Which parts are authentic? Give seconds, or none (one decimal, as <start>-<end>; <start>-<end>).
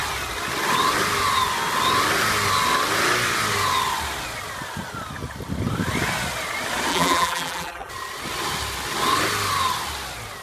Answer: 0.0-6.9; 7.9-10.4